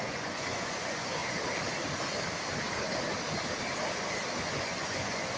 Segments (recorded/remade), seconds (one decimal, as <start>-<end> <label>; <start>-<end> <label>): 0.0-1.2 remade; 1.2-4.4 recorded; 4.4-5.4 remade